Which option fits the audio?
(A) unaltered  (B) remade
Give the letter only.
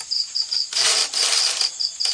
A